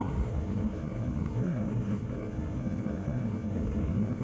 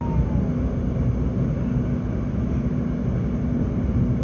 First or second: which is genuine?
second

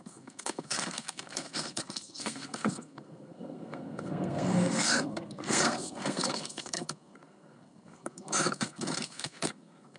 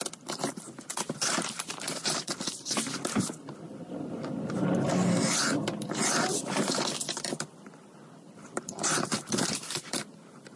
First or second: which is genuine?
second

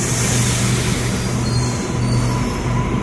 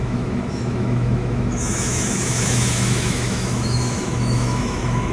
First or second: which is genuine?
first